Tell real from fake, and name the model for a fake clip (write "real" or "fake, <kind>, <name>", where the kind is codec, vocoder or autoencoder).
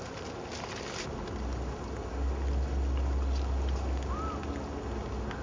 real